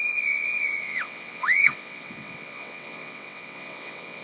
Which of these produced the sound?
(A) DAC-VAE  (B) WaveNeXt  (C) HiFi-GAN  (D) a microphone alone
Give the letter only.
B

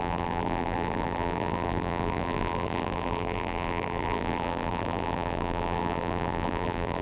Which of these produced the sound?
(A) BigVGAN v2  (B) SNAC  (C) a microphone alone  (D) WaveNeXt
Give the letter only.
A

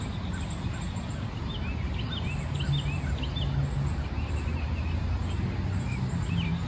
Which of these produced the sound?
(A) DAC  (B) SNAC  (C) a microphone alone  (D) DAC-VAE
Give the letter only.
C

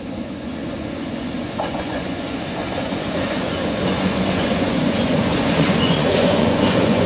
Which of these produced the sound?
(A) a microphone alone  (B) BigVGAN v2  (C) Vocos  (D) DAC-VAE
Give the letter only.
C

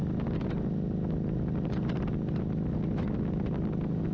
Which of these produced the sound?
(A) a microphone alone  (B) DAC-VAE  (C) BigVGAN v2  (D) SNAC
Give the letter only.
A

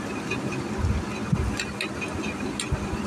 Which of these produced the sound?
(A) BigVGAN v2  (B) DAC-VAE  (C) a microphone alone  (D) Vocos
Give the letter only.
C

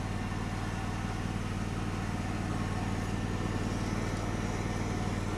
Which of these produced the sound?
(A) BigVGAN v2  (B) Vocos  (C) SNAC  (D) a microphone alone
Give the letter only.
D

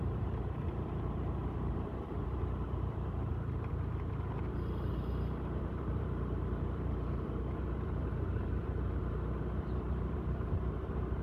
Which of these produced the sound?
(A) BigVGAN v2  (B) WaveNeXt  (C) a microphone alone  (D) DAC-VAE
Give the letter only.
A